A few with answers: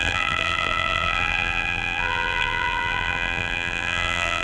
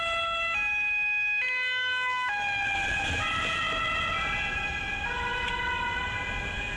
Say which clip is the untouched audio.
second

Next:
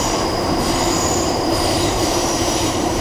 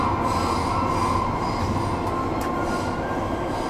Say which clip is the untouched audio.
second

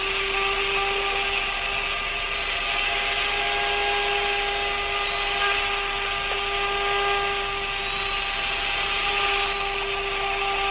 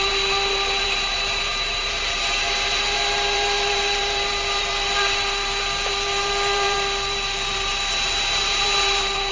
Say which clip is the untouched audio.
first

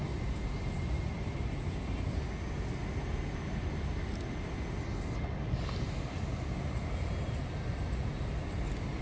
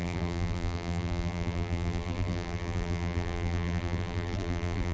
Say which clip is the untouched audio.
first